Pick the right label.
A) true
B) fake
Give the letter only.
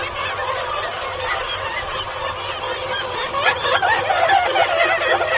A